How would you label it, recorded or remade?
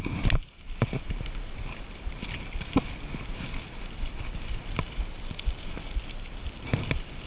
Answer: recorded